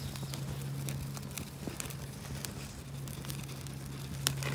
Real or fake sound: real